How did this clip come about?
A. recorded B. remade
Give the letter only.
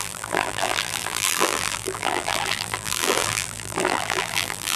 B